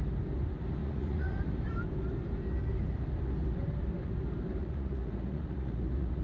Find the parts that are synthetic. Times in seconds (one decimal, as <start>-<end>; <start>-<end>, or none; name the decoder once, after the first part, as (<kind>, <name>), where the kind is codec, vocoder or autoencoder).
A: 0.8-1.4 (vocoder, Vocos); 4.6-6.2